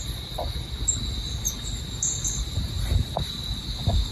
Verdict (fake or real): real